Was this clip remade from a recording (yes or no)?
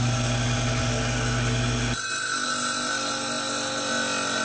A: no